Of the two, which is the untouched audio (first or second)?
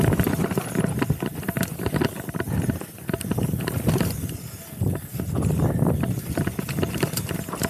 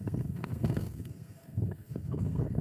first